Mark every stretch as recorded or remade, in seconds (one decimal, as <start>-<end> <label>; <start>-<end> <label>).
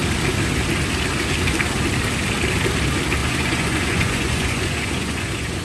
0.0-3.2 recorded; 3.2-5.6 remade